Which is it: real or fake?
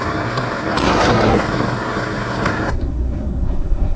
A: fake